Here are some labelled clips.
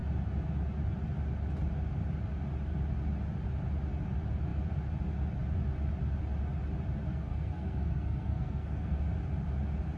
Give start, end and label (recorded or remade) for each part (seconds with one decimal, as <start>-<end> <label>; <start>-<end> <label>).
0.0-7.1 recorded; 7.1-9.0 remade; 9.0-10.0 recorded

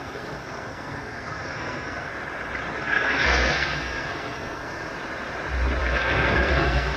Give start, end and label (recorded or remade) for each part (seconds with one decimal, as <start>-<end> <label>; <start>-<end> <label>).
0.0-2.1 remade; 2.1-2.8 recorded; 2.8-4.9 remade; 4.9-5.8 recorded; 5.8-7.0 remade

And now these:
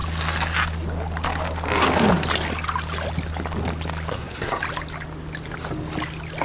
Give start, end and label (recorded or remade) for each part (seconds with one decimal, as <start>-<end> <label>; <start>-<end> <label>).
0.0-4.1 recorded; 4.1-4.6 remade; 4.6-6.4 recorded

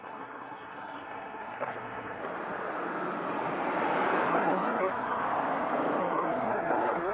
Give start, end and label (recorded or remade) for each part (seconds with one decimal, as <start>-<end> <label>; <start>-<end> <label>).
0.0-2.2 remade; 2.2-4.3 recorded; 4.3-5.2 remade; 5.2-6.0 recorded; 6.0-7.1 remade